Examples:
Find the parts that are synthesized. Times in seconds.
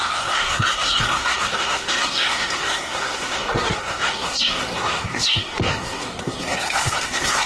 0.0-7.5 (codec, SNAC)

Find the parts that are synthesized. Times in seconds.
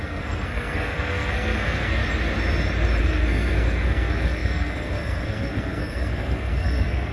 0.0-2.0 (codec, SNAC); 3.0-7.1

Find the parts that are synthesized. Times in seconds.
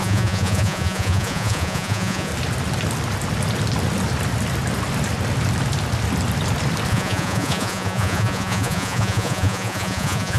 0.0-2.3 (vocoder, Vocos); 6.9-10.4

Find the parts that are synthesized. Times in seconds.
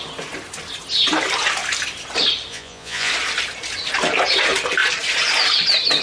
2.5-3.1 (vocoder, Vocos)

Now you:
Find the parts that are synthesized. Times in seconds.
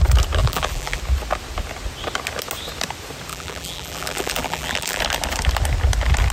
0.4-1.0 (vocoder, BigVGAN v2); 3.3-5.0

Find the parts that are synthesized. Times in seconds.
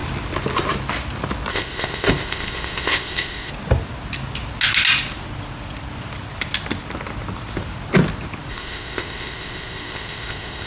1.5-3.5 (codec, ZipCodec); 8.5-10.7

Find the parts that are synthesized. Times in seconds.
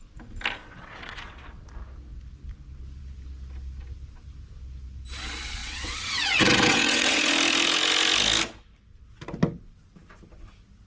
0.6-1.7 (vocoder, WaveNeXt); 5.6-7.3